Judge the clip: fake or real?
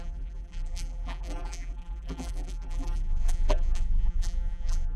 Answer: fake